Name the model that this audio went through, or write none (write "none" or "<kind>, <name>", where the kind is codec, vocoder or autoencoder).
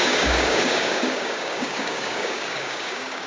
codec, DAC